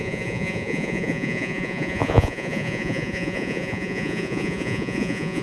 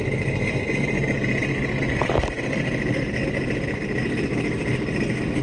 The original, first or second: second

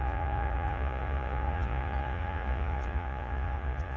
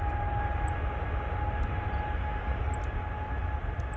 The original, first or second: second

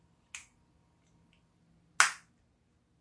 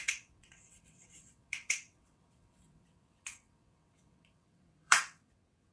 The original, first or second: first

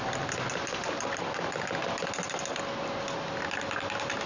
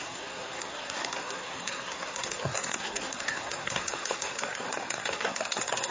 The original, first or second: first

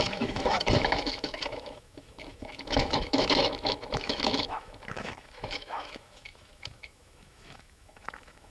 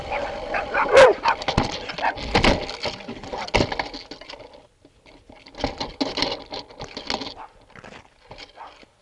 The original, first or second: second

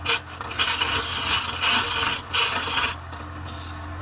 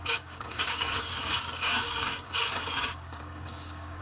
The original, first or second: first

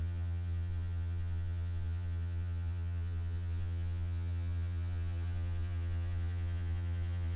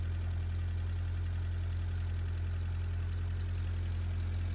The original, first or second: second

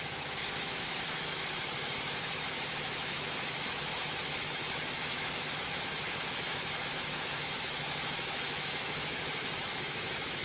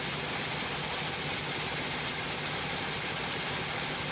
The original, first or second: second